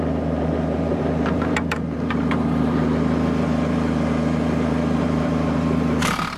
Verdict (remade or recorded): remade